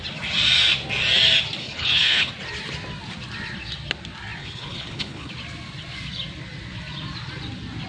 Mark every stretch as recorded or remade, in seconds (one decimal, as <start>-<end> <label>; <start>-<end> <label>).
0.0-1.6 recorded; 1.6-2.3 remade; 2.3-4.4 recorded; 4.4-5.3 remade; 5.3-7.9 recorded